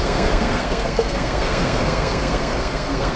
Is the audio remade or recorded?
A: remade